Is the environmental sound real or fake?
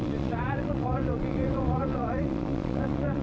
fake